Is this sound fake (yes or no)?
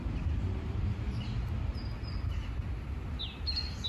no